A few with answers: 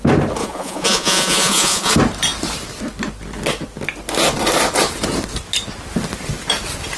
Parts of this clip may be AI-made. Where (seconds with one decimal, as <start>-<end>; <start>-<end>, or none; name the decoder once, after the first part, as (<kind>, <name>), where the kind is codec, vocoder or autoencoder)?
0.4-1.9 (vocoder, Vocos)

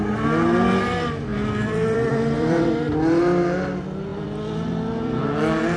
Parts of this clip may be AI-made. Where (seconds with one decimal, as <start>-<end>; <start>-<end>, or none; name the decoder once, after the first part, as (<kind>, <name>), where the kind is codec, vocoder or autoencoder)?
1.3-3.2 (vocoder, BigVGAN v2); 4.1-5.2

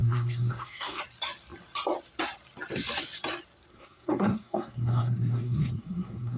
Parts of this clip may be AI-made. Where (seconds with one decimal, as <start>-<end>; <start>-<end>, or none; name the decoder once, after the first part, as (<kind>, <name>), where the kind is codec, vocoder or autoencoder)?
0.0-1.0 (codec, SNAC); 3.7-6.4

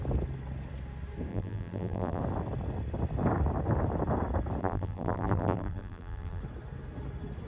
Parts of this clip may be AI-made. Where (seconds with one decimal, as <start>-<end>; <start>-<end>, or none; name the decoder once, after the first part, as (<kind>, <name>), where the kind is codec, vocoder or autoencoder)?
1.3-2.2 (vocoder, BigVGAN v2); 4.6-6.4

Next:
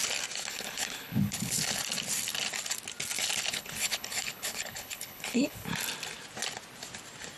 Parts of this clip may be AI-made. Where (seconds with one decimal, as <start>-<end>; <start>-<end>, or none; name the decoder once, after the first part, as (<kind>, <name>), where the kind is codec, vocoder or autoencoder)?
0.5-1.8 (codec, HILCodec); 3.5-5.7

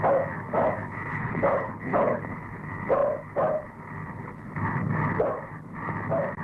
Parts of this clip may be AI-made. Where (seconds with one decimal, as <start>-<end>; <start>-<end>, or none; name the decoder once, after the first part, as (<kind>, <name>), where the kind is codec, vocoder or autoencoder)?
1.1-2.2 (codec, HILCodec)

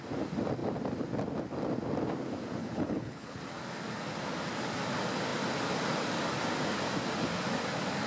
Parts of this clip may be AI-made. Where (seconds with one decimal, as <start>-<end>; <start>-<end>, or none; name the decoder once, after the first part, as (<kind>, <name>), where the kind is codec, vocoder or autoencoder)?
2.6-3.4 (codec, HILCodec)

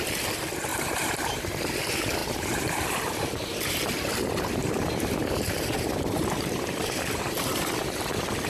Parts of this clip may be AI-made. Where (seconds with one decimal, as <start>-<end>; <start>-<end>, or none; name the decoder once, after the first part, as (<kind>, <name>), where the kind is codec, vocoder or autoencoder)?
0.7-1.6 (vocoder, BigVGAN v2); 2.2-3.7; 4.6-7.2